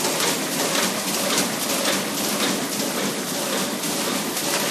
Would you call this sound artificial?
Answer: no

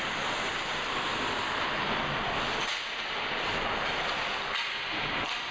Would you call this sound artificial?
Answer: no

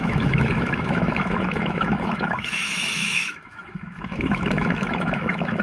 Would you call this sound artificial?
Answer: yes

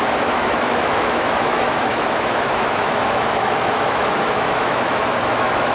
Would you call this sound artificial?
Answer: yes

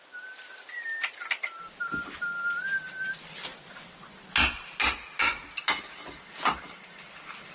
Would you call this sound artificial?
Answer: no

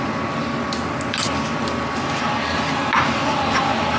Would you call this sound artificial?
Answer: no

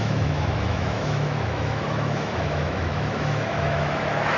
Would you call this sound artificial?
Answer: yes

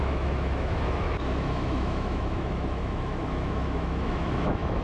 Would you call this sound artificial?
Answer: yes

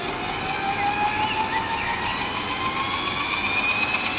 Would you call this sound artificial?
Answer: no